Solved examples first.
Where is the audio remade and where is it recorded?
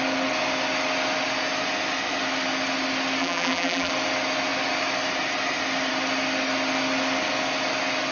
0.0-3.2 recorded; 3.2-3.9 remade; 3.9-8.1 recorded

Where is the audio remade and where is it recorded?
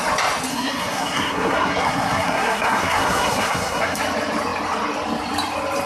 0.0-0.5 recorded; 0.5-4.0 remade; 4.0-5.9 recorded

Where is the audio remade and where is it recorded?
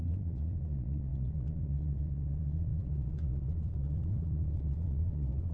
0.0-5.5 remade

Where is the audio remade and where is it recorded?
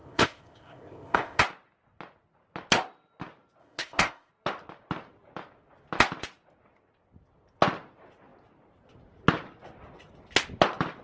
0.0-1.4 remade; 1.4-3.6 recorded; 3.6-4.3 remade; 4.3-11.0 recorded